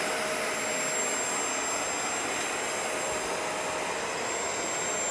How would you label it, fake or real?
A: real